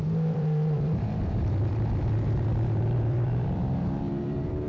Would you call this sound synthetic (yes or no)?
yes